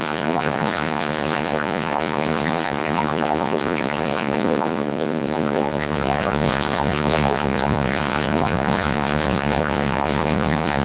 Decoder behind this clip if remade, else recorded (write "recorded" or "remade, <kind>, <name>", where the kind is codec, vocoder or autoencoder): remade, vocoder, Vocos